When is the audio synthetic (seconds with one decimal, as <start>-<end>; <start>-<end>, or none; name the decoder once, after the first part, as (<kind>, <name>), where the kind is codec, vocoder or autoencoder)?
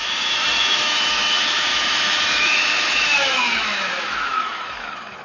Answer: 0.0-5.2 (autoencoder, DAC-VAE)